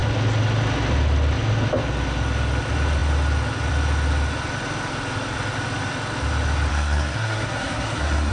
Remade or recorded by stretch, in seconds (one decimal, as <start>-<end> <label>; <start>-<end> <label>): 0.0-6.7 recorded; 6.7-8.3 remade